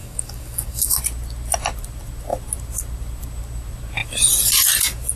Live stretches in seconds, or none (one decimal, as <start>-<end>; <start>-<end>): 1.0-5.2